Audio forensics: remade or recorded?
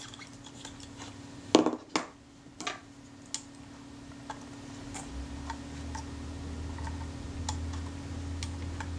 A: recorded